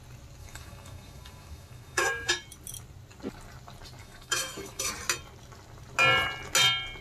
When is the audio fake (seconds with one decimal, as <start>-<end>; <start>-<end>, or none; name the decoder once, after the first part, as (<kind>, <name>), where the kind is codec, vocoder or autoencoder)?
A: 0.4-2.3 (autoencoder, DAC-VAE); 4.0-4.9